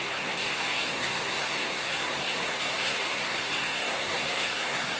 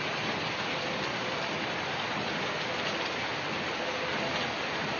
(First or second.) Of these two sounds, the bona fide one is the second